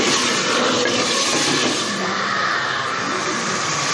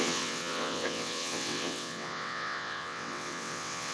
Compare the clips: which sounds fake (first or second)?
second